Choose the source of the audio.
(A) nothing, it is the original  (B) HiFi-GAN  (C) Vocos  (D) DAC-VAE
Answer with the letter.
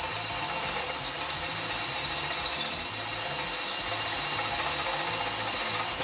A